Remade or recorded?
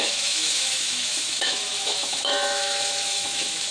remade